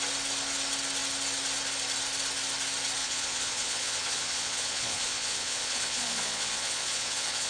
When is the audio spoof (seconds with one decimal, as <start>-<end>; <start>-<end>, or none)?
3.0-7.5